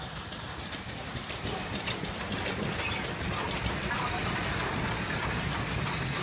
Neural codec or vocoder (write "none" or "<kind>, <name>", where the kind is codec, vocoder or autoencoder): none